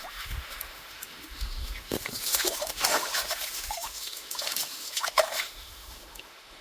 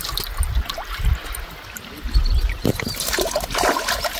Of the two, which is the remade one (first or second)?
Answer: first